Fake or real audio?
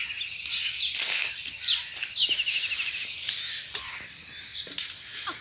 real